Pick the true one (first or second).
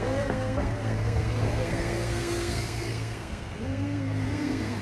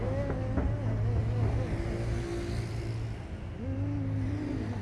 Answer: second